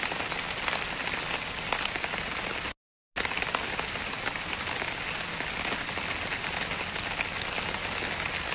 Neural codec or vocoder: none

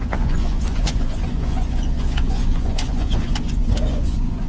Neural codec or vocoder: vocoder, Vocos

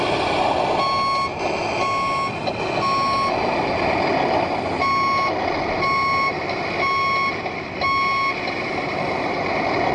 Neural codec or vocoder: none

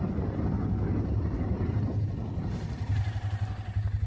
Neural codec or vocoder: none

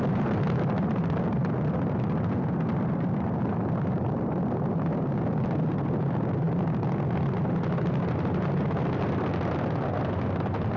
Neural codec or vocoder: none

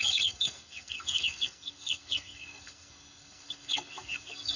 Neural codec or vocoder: codec, SNAC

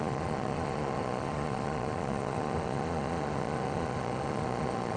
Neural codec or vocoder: vocoder, Vocos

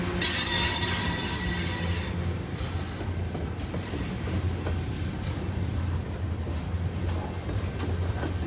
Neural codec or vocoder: none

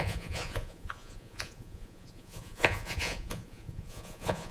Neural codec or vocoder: vocoder, Vocos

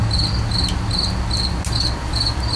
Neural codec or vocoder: none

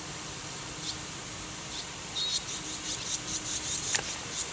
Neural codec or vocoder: vocoder, BigVGAN v2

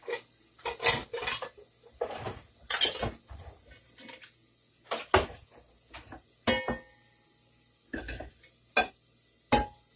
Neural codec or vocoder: none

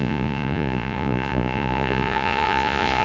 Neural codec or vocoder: vocoder, Vocos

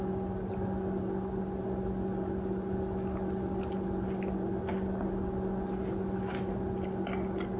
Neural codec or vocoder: none